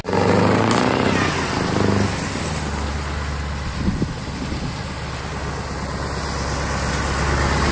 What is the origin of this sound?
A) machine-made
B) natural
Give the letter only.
B